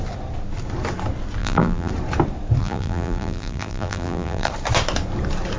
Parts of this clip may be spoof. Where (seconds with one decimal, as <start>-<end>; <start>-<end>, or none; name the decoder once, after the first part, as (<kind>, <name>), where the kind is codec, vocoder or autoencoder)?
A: 1.4-1.9 (vocoder, BigVGAN v2); 2.6-4.5